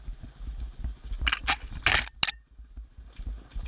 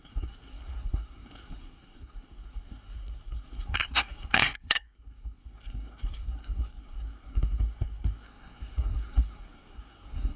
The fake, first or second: second